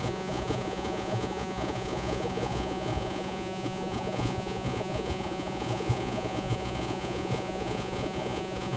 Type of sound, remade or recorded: remade